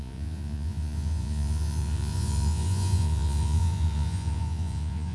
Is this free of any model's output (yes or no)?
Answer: no